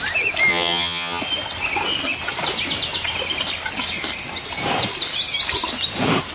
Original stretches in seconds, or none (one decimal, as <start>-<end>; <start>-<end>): 0.0-0.5; 1.2-6.3